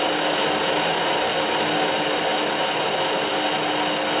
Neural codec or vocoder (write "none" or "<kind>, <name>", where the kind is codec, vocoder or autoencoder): none